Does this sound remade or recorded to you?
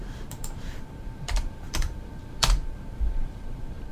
remade